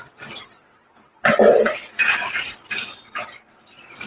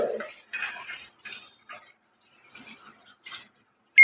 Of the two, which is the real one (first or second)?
second